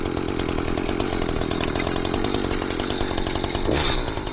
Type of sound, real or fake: real